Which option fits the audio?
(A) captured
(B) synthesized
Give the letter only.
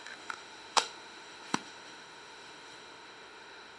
B